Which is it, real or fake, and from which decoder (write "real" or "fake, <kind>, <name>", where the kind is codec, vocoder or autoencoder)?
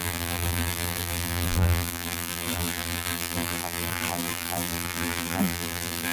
fake, vocoder, BigVGAN v2